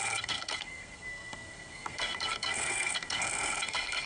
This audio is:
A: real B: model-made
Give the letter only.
B